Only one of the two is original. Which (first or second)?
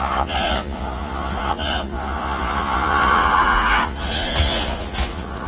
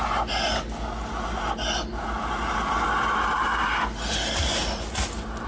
second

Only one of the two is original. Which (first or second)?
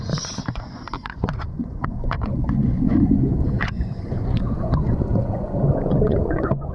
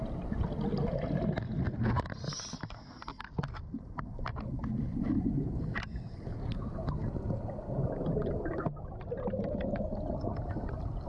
second